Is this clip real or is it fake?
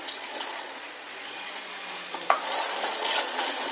fake